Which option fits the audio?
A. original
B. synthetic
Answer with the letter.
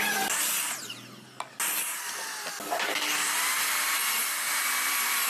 A